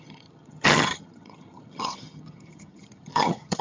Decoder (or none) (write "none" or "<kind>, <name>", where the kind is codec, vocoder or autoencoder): vocoder, HiFi-GAN